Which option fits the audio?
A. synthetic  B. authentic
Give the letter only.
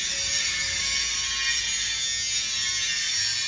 B